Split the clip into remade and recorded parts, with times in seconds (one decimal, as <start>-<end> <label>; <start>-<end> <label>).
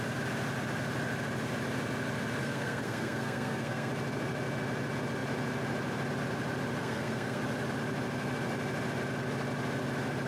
0.0-2.4 recorded; 2.4-3.9 remade; 3.9-6.8 recorded; 6.8-7.4 remade; 7.4-10.3 recorded